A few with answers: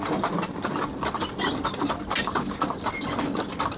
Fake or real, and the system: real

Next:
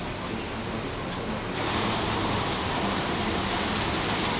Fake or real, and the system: real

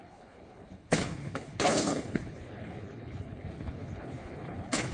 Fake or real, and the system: fake, codec, HILCodec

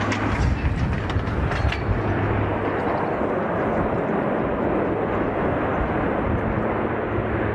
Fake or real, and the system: real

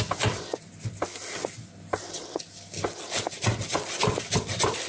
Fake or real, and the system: real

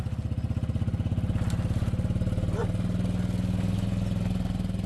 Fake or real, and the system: real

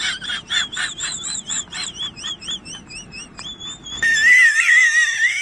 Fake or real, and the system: fake, vocoder, BigVGAN v2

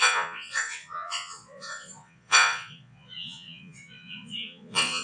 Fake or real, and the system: fake, vocoder, Vocos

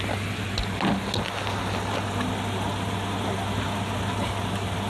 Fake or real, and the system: real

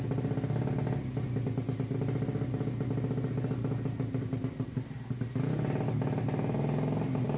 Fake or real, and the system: real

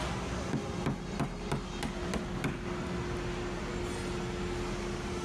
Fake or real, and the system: real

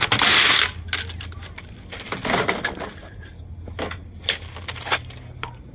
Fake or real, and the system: real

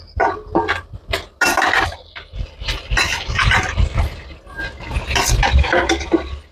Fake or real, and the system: real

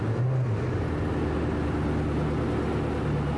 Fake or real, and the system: real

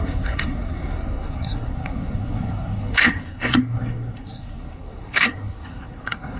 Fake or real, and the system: fake, codec, SNAC